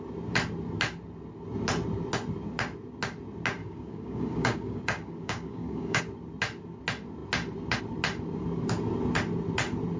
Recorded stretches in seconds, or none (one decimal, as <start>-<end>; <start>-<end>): 0.0-3.6; 6.0-10.0